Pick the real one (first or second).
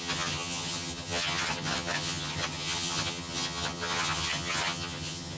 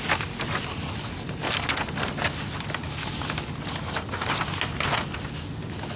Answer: second